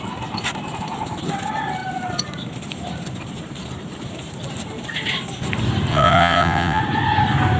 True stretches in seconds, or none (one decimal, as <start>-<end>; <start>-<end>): 0.0-5.9; 6.8-7.6